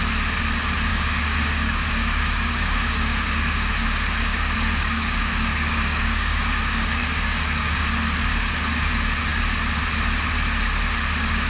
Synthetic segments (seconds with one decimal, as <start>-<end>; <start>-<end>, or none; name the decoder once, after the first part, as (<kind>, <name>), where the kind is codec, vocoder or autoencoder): 0.9-3.7 (codec, DAC); 4.3-7.8